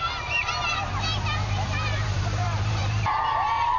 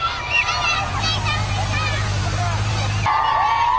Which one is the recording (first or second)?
second